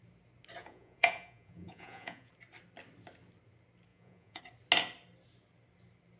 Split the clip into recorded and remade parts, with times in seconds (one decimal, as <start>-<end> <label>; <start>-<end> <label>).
0.0-0.6 recorded; 0.6-2.3 remade; 2.3-3.9 recorded; 3.9-4.4 remade; 4.4-6.2 recorded